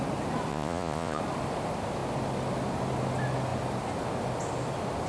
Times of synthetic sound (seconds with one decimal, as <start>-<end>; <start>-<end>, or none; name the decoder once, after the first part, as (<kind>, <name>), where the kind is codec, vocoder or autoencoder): 0.5-1.2 (vocoder, Vocos)